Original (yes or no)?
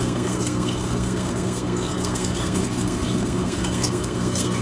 no